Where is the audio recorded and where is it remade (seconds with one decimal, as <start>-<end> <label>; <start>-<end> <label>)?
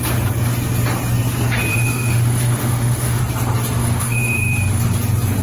0.0-1.7 recorded; 1.7-3.2 remade; 3.2-3.8 recorded; 3.8-4.8 remade; 4.8-5.4 recorded